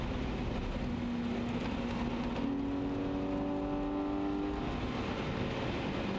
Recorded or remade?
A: recorded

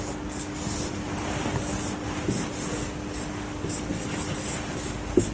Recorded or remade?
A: recorded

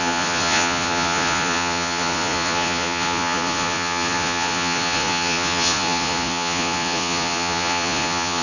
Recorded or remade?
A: remade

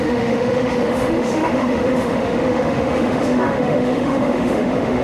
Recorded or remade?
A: remade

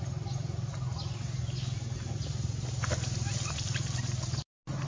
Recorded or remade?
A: recorded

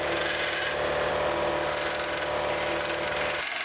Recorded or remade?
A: recorded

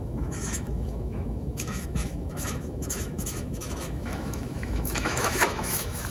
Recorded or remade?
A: remade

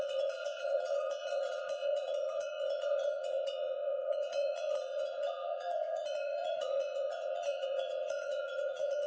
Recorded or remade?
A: remade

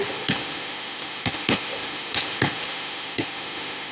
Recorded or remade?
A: remade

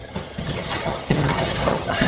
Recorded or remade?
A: remade